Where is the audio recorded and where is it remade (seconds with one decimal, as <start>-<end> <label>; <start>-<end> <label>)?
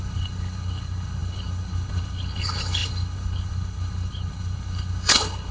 0.0-5.5 remade